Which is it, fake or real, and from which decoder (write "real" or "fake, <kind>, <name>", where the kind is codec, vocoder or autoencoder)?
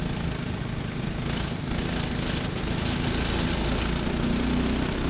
real